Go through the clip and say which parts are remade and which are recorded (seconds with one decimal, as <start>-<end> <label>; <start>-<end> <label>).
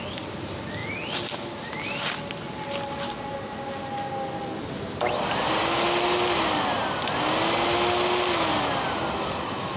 0.0-9.8 recorded